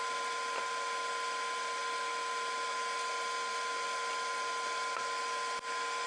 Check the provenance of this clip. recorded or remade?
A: recorded